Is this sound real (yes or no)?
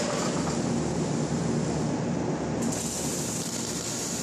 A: yes